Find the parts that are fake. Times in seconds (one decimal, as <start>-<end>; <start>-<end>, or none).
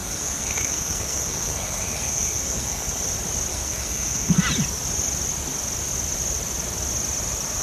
0.0-3.0; 3.5-4.4